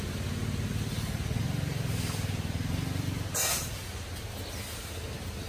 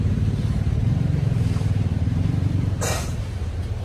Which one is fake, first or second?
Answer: second